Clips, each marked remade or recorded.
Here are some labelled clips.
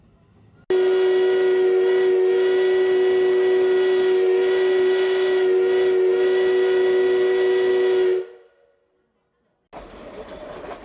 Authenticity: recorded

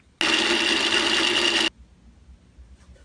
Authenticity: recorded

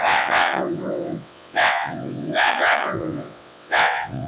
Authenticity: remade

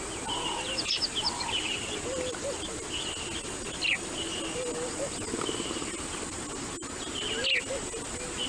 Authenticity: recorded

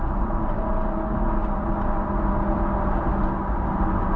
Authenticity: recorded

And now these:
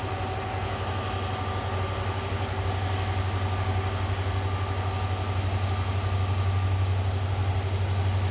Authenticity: recorded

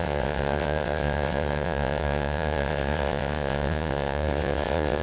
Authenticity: remade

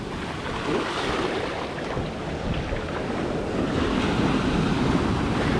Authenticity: recorded